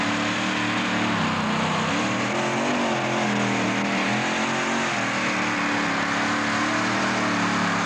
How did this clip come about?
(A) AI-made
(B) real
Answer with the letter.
B